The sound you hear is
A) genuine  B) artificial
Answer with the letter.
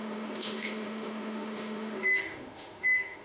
B